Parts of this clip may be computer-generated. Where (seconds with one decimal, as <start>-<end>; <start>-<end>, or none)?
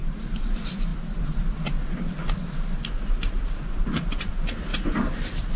0.0-0.5